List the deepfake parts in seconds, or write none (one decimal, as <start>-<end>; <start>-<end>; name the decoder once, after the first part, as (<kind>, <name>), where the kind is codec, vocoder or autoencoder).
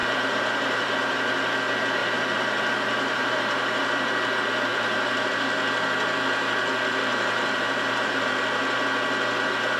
0.0-0.9 (vocoder, BigVGAN v2); 2.0-4.2; 4.7-5.3; 7.1-8.6